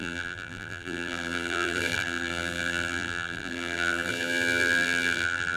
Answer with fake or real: fake